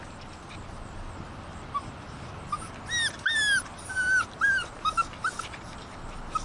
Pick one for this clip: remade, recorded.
recorded